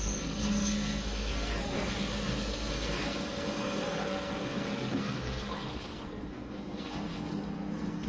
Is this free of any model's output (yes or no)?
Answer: no